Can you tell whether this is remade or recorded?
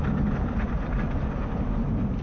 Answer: recorded